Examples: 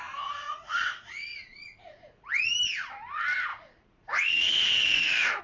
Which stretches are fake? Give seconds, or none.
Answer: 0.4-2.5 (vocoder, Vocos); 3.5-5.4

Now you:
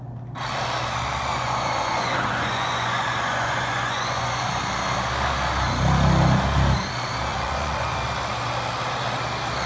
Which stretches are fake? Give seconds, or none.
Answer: 1.3-4.6 (vocoder, Vocos); 7.3-8.0

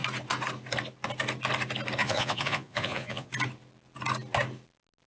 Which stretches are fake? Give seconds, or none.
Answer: 2.0-3.3 (vocoder, Vocos)